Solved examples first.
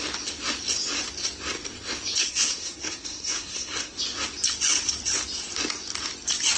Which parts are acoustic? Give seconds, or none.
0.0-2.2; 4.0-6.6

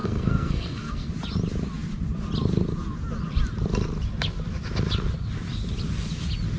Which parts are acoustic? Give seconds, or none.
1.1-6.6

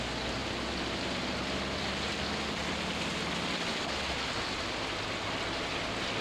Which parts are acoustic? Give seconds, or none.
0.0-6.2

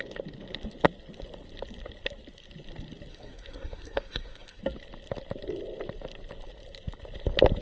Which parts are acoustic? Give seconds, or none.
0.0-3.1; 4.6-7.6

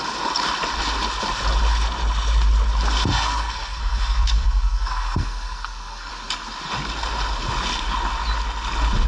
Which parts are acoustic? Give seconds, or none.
0.0-3.1; 6.1-9.1